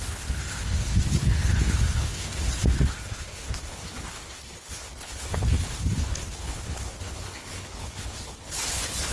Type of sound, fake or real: fake